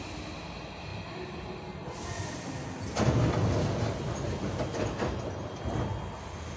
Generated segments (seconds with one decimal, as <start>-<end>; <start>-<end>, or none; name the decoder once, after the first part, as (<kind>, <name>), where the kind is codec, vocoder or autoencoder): none